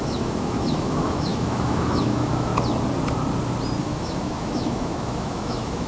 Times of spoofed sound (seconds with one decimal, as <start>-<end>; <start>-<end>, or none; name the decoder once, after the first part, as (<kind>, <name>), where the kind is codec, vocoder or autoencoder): 0.0-2.5 (autoencoder, DAC-VAE); 3.8-5.9